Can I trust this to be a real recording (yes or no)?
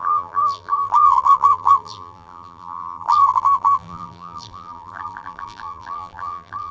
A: no